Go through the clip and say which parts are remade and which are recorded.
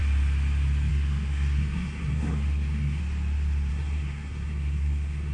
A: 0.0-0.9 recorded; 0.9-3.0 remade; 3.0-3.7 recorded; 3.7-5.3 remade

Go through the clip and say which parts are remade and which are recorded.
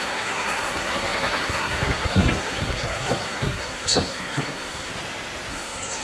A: 0.0-4.9 remade; 4.9-5.5 recorded; 5.5-6.0 remade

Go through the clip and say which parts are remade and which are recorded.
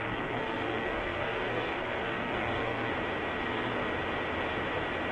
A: 0.0-2.9 remade; 2.9-3.4 recorded; 3.4-3.8 remade; 3.8-5.1 recorded